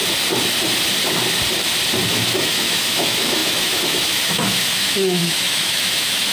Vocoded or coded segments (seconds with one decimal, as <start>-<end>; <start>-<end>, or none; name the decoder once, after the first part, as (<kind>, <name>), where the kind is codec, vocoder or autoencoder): 2.1-6.3 (autoencoder, DAC-VAE)